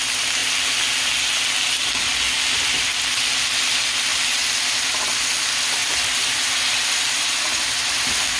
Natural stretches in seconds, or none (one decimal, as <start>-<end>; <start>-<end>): 0.0-4.1; 5.0-8.4